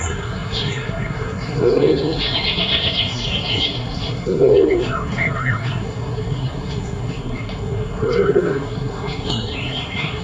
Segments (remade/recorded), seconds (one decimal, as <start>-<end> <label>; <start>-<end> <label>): 0.0-10.2 remade